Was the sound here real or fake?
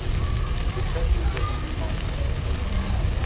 real